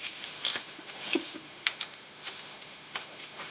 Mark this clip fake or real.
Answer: fake